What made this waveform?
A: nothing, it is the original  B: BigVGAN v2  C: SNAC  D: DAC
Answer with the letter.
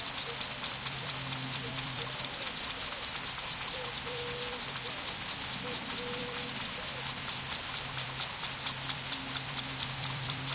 B